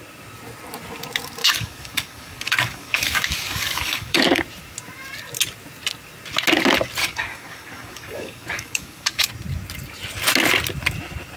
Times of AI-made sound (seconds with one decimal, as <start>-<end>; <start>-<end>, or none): 1.4-4.4; 7.0-9.3